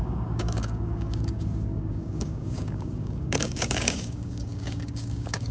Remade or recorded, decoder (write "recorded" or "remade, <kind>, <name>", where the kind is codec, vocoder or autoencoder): remade, codec, DAC